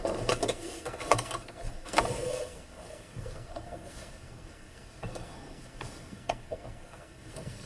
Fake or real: fake